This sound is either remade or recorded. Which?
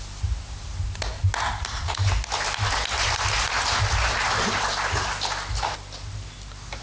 recorded